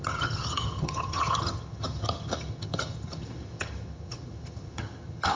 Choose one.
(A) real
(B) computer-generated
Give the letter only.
B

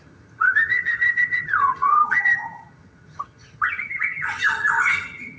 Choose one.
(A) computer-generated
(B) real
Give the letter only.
A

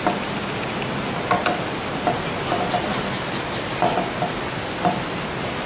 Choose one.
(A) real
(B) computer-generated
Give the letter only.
A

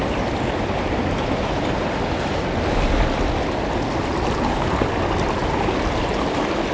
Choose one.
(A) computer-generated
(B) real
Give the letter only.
B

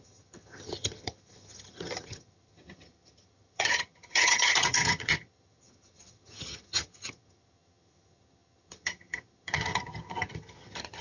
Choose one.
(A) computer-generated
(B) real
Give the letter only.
A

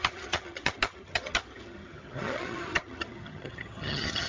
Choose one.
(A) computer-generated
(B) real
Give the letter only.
A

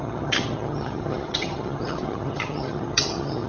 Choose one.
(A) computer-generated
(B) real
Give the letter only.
A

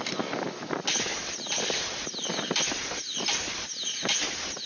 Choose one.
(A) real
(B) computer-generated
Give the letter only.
A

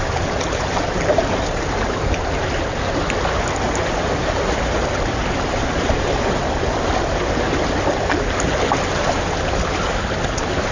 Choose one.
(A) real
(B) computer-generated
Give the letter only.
A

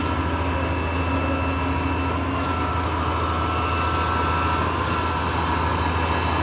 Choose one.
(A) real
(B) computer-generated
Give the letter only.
A